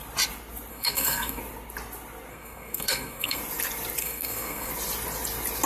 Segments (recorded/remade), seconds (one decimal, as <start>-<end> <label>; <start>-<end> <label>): 0.0-0.7 recorded; 0.7-1.4 remade; 1.4-2.3 recorded; 2.3-3.4 remade; 3.4-4.0 recorded; 4.0-4.7 remade; 4.7-5.7 recorded